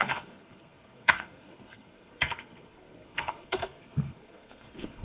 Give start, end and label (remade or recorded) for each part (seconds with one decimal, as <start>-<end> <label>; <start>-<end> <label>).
0.0-5.0 remade